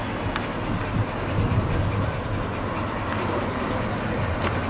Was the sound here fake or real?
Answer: real